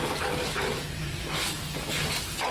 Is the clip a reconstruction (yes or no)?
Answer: no